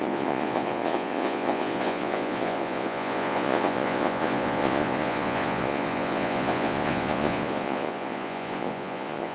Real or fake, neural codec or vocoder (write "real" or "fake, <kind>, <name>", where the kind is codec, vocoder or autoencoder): fake, vocoder, Vocos